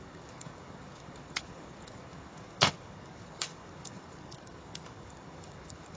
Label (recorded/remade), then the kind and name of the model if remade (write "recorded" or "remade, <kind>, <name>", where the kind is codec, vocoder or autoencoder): remade, codec, DAC